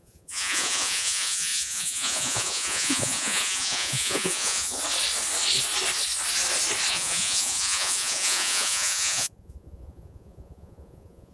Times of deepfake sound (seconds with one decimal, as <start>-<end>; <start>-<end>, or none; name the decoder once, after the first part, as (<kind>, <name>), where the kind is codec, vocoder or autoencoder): 0.0-4.8 (vocoder, Vocos); 6.9-11.3